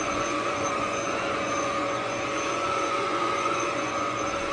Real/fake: fake